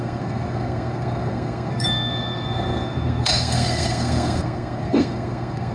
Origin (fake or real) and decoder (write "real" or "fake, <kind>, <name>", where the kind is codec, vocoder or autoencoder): fake, codec, SNAC